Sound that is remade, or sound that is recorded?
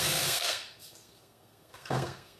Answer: remade